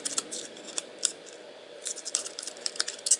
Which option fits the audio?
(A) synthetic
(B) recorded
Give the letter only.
A